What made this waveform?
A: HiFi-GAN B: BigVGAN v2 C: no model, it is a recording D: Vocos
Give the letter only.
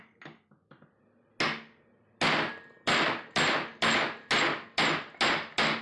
C